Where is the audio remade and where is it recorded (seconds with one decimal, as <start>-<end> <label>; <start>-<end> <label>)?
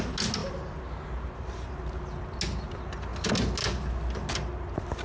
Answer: 0.0-5.0 recorded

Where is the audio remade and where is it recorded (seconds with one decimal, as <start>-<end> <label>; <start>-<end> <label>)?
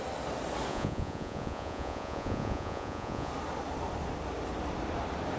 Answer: 0.0-0.7 recorded; 0.7-3.3 remade; 3.3-5.4 recorded